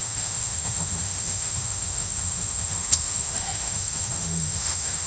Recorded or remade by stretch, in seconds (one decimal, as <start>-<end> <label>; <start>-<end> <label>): 0.0-5.1 remade